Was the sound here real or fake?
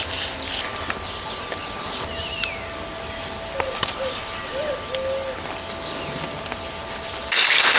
real